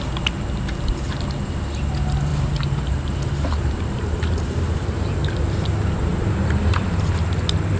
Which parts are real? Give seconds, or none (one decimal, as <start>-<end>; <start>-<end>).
0.0-2.3; 5.4-6.1; 6.9-7.8